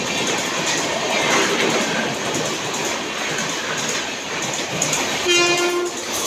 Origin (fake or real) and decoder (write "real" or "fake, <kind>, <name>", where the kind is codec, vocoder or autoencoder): real